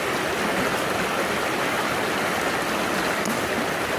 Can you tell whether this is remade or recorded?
recorded